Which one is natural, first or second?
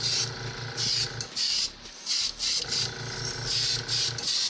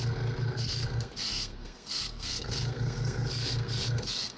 first